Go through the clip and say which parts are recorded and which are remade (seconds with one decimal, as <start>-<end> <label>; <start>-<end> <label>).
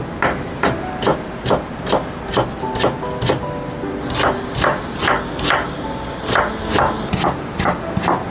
0.0-8.3 recorded